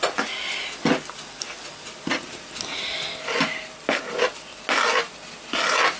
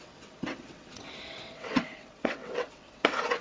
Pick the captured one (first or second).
first